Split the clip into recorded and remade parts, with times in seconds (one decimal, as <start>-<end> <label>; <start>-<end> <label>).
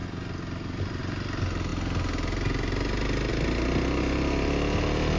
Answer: 0.0-5.2 recorded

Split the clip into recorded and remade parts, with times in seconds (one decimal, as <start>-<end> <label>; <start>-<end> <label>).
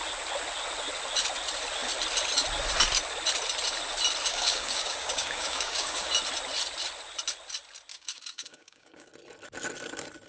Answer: 0.0-4.3 recorded; 4.3-6.1 remade; 6.1-7.9 recorded; 7.9-9.1 remade; 9.1-10.3 recorded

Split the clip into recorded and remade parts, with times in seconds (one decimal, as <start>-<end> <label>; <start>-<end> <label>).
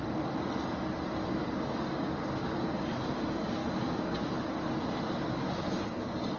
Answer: 0.0-6.4 recorded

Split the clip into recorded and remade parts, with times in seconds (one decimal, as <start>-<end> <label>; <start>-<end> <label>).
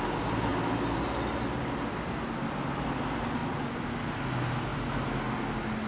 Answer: 0.0-5.9 recorded